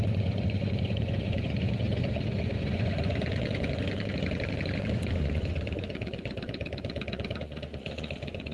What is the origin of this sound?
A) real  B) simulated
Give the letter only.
B